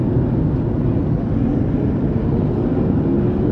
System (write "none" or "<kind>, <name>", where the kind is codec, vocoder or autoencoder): none